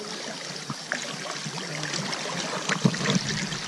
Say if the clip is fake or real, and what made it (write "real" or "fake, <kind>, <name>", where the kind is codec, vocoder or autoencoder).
real